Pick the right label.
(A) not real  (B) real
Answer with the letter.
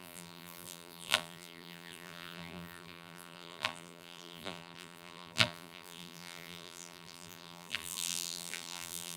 A